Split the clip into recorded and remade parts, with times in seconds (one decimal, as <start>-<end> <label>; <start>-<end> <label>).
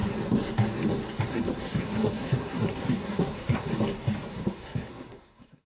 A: 0.0-1.3 recorded; 1.3-3.7 remade; 3.7-4.3 recorded; 4.3-5.7 remade